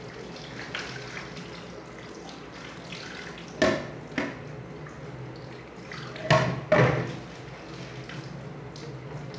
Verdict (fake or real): real